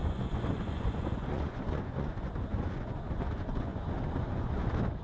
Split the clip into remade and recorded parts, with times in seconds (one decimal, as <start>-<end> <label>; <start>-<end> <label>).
0.0-5.0 remade